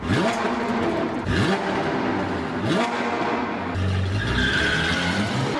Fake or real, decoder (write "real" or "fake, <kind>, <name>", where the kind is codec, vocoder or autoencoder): real